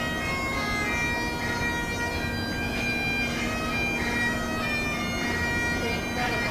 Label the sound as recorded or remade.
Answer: recorded